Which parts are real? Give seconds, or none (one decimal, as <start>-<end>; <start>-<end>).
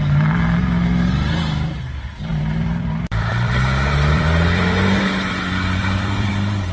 0.0-2.3; 6.3-6.7